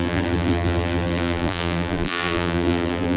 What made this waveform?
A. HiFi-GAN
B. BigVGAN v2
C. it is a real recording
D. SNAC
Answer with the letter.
B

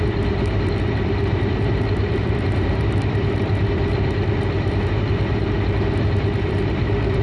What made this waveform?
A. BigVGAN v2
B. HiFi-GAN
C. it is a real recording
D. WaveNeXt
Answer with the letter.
A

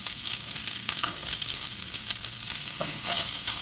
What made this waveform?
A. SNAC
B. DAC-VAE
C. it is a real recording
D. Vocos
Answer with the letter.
A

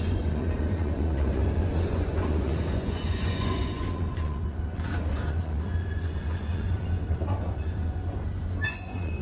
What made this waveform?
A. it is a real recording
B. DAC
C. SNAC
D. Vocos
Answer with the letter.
D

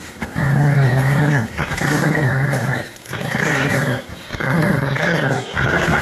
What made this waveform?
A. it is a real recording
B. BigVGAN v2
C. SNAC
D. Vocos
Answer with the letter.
C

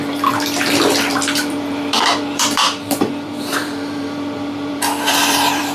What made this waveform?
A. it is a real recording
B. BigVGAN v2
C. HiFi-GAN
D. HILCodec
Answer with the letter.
B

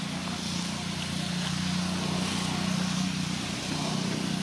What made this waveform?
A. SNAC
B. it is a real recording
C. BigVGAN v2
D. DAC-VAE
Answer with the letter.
B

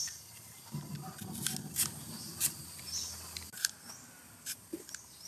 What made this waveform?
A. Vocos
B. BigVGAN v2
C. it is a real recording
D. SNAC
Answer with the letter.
C